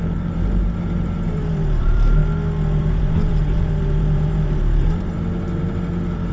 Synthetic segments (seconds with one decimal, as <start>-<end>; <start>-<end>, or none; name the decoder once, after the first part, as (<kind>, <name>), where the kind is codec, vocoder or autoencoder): 0.0-2.2 (vocoder, BigVGAN v2); 2.8-6.3